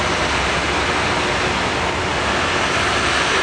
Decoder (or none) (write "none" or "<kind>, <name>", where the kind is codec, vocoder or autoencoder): none